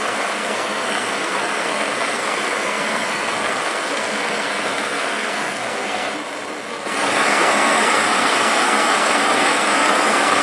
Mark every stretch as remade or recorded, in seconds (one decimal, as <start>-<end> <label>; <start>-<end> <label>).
0.0-6.1 remade; 6.1-6.7 recorded; 6.7-10.4 remade